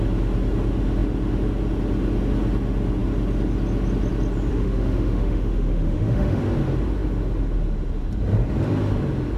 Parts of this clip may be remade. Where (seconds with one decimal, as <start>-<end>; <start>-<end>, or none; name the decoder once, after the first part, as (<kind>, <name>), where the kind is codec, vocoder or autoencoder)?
4.5-6.4 (autoencoder, DAC-VAE)